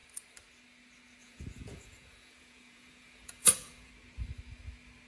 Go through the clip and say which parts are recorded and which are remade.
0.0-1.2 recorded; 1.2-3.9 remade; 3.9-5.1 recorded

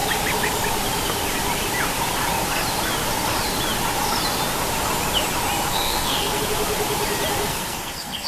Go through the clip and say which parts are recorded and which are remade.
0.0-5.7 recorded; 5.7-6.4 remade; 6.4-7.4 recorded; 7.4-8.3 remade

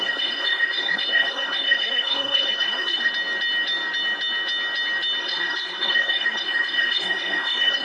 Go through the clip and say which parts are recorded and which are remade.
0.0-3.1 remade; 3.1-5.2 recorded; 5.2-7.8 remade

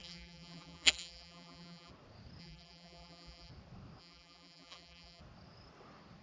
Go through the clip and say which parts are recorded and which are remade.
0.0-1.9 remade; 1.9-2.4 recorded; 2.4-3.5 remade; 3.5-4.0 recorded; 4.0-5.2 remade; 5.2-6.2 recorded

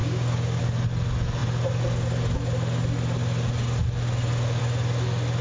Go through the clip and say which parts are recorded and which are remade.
0.0-0.6 remade; 0.6-5.4 recorded

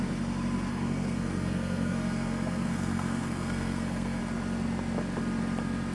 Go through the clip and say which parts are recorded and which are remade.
0.0-0.7 recorded; 0.7-4.2 remade; 4.2-5.9 recorded

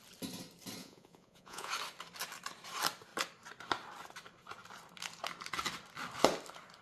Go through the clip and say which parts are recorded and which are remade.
0.0-0.8 recorded; 0.8-1.7 remade; 1.7-6.8 recorded